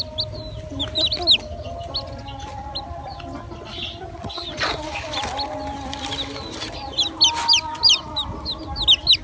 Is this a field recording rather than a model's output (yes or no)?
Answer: yes